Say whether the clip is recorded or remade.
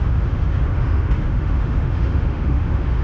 remade